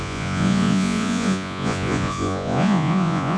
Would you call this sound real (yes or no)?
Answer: no